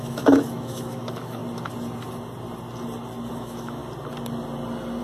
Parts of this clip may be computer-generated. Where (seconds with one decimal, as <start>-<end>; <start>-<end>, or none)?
0.0-1.4; 3.3-3.8